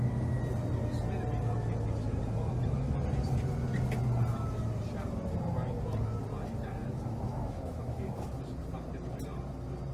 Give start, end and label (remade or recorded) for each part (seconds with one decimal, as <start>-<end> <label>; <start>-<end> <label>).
0.0-6.8 recorded; 6.8-8.4 remade; 8.4-9.9 recorded